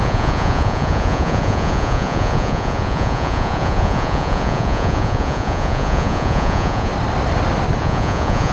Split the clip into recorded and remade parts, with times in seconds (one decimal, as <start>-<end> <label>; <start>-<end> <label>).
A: 0.0-6.9 remade; 6.9-7.8 recorded; 7.8-8.5 remade